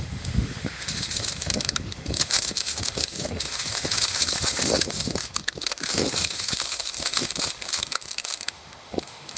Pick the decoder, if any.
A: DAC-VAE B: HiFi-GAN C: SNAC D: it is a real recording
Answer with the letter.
A